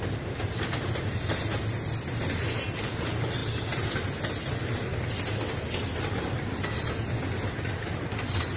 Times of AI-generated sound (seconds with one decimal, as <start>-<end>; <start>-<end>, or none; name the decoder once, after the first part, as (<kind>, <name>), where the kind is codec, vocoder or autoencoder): none

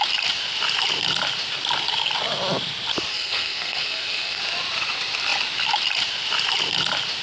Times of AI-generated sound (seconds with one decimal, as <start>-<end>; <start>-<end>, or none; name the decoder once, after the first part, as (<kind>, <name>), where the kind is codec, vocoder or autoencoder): 3.1-4.4 (codec, SNAC)

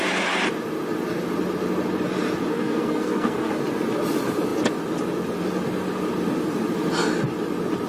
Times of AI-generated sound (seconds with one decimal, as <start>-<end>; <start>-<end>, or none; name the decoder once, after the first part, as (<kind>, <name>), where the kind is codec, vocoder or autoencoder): 2.5-3.6 (codec, SNAC)

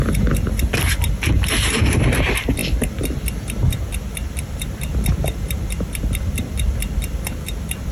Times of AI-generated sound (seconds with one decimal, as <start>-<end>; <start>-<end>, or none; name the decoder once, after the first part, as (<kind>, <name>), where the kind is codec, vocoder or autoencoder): 0.0-7.9 (vocoder, BigVGAN v2)